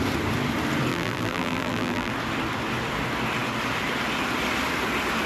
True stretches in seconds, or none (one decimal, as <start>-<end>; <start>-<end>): 0.0-0.9; 2.1-5.3